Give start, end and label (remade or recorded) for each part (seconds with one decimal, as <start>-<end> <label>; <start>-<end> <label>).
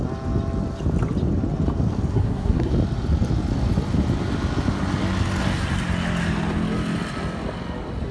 0.0-2.1 recorded; 2.1-2.7 remade; 2.7-8.1 recorded